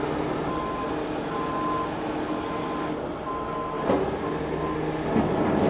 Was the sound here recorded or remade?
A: recorded